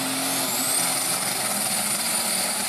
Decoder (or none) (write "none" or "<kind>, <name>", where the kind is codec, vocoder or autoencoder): none